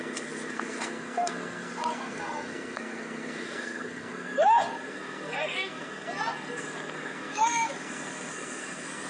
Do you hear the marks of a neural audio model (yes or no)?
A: yes